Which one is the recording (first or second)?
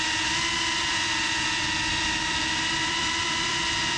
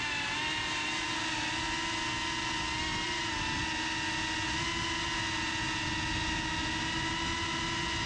second